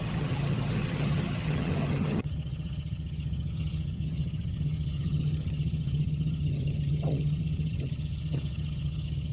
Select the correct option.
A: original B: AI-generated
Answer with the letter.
B